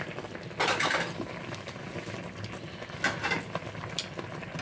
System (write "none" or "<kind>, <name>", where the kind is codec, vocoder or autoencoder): none